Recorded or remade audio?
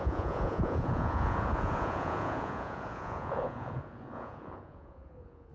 remade